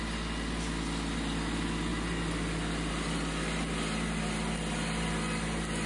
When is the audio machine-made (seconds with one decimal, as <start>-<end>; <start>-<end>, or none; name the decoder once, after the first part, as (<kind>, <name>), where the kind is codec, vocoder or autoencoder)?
none